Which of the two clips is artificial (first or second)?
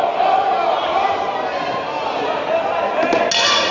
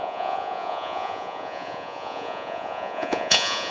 second